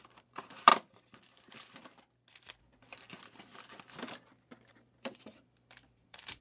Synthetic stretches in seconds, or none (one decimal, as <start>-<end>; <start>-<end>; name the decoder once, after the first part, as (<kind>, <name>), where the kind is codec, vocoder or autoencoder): 0.0-0.7 (vocoder, BigVGAN v2); 2.6-3.5; 4.7-6.4

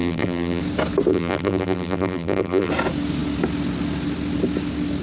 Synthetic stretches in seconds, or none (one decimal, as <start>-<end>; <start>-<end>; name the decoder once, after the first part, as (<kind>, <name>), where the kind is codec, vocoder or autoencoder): 0.0-0.6 (vocoder, BigVGAN v2); 1.1-2.7

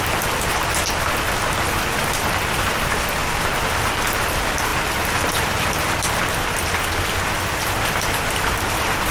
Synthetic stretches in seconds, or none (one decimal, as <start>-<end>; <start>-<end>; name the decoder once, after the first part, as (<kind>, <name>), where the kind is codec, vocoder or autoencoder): 4.7-5.7 (vocoder, BigVGAN v2)

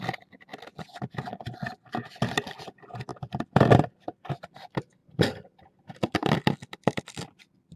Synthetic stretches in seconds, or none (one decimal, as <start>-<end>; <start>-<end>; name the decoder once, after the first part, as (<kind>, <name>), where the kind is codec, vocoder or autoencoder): 3.1-4.2 (vocoder, BigVGAN v2); 5.0-5.8

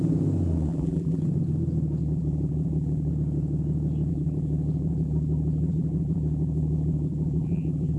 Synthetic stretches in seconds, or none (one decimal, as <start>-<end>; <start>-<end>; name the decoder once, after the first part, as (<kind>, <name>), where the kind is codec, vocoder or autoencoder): 0.7-1.2 (vocoder, BigVGAN v2); 2.0-3.1; 4.1-8.0

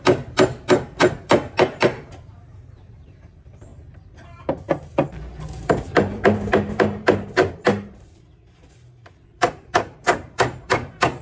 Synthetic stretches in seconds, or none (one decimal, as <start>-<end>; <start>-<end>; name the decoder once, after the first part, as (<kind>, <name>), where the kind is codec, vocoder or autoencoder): 0.0-11.2 (vocoder, BigVGAN v2)

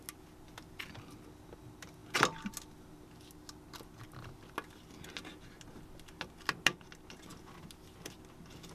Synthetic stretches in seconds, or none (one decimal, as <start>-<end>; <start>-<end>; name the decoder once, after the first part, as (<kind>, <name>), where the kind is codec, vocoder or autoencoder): none